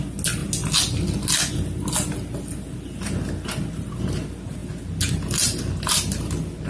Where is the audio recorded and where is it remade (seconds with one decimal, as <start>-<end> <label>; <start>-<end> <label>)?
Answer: 0.0-6.7 recorded